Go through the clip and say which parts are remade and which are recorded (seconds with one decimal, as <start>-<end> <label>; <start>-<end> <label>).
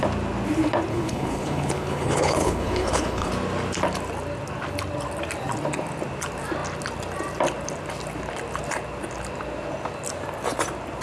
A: 0.0-0.9 recorded; 0.9-3.3 remade; 3.3-11.0 recorded